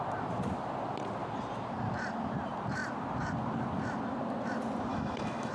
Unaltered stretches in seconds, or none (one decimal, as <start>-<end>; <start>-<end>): 0.0-4.9